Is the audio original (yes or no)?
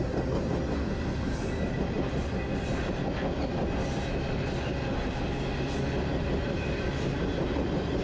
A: yes